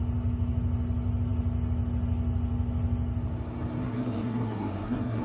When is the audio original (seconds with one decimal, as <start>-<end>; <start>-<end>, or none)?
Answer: 0.0-3.8